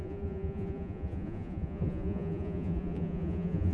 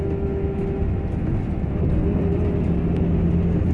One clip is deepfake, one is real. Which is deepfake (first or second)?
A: first